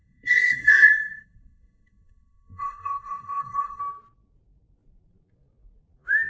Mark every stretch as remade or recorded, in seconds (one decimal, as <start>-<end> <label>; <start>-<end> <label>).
0.0-3.8 remade; 3.8-6.3 recorded